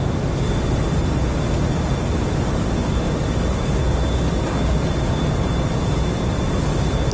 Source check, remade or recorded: recorded